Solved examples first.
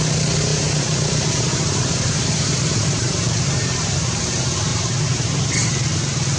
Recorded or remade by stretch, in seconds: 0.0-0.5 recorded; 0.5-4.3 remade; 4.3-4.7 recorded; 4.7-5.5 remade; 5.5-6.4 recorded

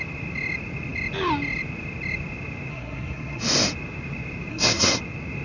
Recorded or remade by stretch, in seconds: 0.0-2.7 recorded; 2.7-3.4 remade; 3.4-4.5 recorded; 4.5-5.0 remade; 5.0-5.4 recorded

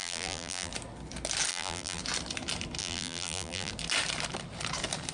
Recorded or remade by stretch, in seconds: 0.0-0.7 remade; 0.7-1.5 recorded; 1.5-2.0 remade; 2.0-2.8 recorded; 2.8-3.7 remade; 3.7-5.1 recorded

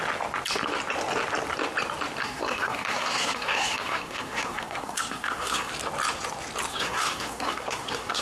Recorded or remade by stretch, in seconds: 0.0-2.2 recorded; 2.2-5.7 remade; 5.7-6.7 recorded; 6.7-8.2 remade